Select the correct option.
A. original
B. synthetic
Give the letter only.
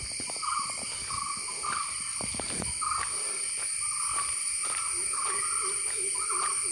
A